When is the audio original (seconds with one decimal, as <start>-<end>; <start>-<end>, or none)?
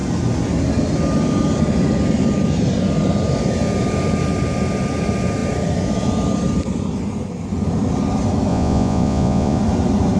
0.0-8.5; 9.6-10.2